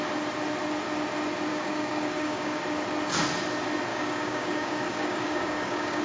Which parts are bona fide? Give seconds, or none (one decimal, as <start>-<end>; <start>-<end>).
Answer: 0.0-1.5; 2.6-3.9